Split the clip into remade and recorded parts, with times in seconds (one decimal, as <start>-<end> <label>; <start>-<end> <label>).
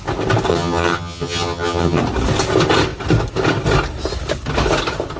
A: 0.0-0.5 recorded; 0.5-2.0 remade; 2.0-5.2 recorded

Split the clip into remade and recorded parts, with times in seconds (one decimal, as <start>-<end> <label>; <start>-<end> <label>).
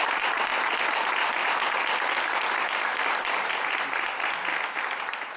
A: 0.0-4.5 recorded; 4.5-5.0 remade; 5.0-5.4 recorded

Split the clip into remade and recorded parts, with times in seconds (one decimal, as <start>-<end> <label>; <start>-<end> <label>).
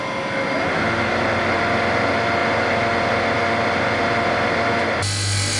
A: 0.0-5.6 recorded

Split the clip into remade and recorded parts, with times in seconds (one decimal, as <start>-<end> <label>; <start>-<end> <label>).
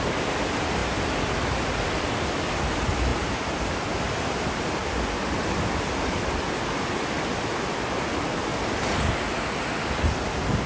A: 0.0-3.1 recorded; 3.1-4.0 remade; 4.0-10.7 recorded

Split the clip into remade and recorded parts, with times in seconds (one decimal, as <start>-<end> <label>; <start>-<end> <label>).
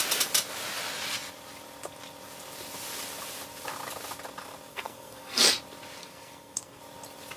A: 0.0-4.7 recorded; 4.7-5.5 remade; 5.5-6.0 recorded; 6.0-6.8 remade; 6.8-7.4 recorded